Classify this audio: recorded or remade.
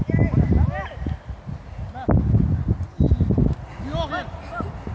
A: recorded